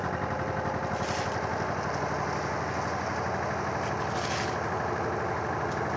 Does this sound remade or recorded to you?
recorded